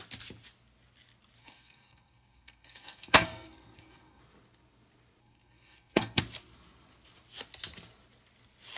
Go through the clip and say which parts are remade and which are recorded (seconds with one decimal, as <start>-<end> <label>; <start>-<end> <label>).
0.0-1.4 recorded; 1.4-4.2 remade; 4.2-5.2 recorded; 5.2-6.2 remade; 6.2-8.8 recorded